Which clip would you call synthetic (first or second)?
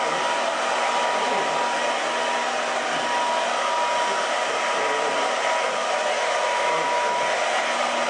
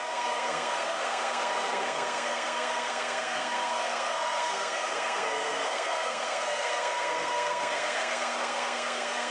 second